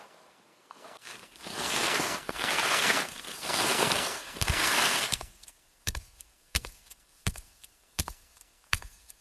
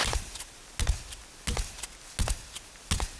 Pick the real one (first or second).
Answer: second